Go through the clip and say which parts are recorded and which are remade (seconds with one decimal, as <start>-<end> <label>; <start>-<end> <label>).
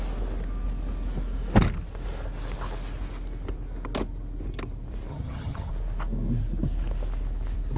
0.0-5.1 recorded; 5.1-5.7 remade; 5.7-7.8 recorded